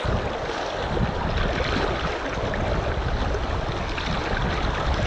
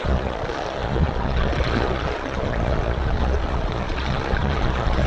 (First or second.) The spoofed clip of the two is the second